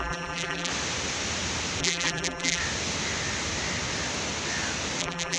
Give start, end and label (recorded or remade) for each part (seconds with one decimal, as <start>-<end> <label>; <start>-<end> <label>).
0.0-0.7 remade; 0.7-1.8 recorded; 1.8-2.6 remade; 2.6-5.0 recorded; 5.0-5.4 remade